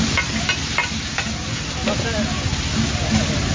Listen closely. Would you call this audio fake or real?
real